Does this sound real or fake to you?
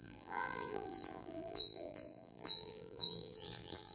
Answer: fake